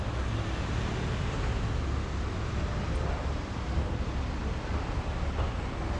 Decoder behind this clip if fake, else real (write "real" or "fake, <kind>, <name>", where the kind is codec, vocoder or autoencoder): real